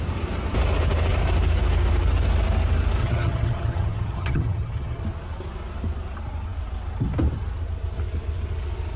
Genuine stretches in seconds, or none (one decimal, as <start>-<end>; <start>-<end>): 0.0-3.0; 5.0-9.0